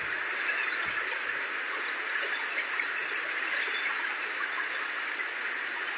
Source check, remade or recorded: recorded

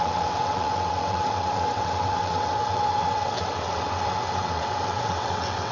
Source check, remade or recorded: remade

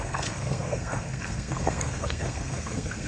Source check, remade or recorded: remade